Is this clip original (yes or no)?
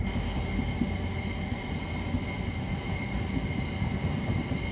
yes